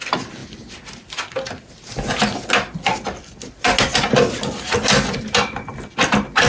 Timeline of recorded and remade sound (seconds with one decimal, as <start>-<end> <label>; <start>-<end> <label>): 0.0-6.5 recorded

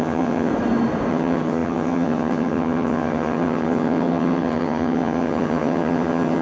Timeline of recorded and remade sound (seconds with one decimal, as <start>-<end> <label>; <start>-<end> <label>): 0.0-0.5 remade; 0.5-1.1 recorded; 1.1-6.4 remade